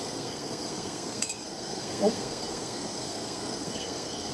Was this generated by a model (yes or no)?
yes